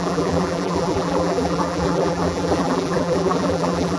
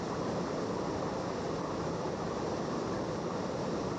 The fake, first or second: first